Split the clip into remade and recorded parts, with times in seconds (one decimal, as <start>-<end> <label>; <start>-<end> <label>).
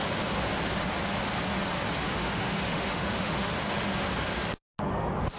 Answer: 0.0-2.0 recorded; 2.0-3.5 remade; 3.5-5.4 recorded